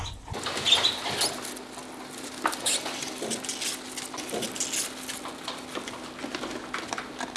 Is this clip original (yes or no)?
yes